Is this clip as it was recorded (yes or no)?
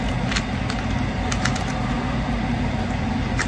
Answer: yes